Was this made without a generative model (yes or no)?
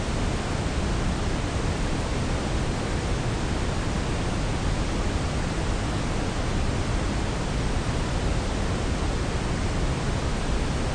yes